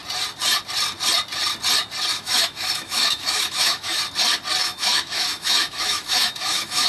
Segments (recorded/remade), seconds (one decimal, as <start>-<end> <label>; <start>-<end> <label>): 0.0-2.1 recorded; 2.1-4.0 remade; 4.0-4.6 recorded; 4.6-6.9 remade